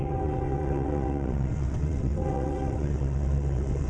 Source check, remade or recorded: remade